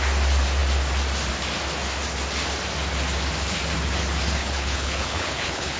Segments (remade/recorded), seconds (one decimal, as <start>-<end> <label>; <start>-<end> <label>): 0.0-4.4 recorded; 4.4-5.8 remade